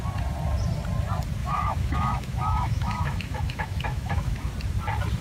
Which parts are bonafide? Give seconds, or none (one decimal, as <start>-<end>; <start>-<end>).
0.0-1.4; 4.5-5.2